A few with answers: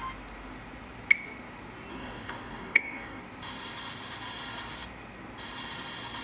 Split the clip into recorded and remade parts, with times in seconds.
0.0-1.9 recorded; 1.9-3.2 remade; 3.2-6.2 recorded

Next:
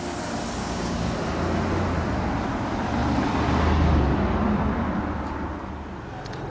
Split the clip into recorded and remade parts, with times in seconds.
0.0-0.6 recorded; 0.6-1.1 remade; 1.1-6.5 recorded

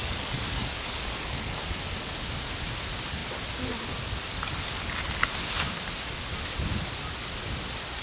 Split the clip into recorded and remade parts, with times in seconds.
0.0-2.1 remade; 2.1-8.0 recorded

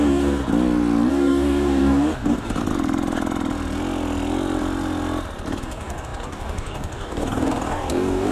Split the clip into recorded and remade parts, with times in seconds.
0.0-0.4 remade; 0.4-1.1 recorded; 1.1-2.6 remade; 2.6-5.6 recorded; 5.6-8.3 remade

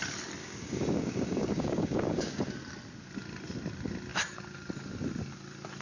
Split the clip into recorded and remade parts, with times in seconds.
0.0-0.4 recorded; 0.4-2.5 remade; 2.5-5.8 recorded